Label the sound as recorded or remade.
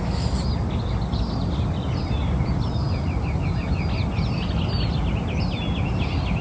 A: recorded